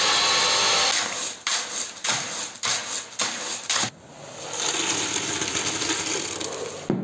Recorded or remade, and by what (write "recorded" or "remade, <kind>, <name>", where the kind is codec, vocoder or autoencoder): recorded